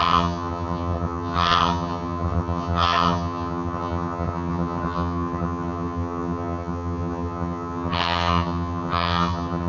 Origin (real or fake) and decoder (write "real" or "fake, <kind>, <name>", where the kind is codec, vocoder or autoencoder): fake, vocoder, HiFi-GAN